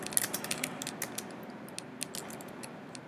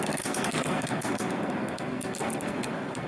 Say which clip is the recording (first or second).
first